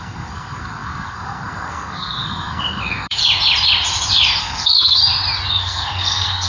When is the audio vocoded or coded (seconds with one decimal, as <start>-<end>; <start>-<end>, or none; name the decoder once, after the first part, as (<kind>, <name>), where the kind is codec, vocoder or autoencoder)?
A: 0.0-3.2 (codec, SNAC); 4.4-5.0; 5.5-6.5